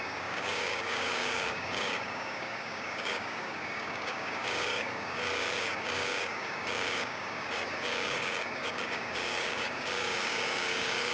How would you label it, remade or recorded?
remade